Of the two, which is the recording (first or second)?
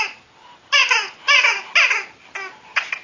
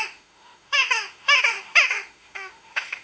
first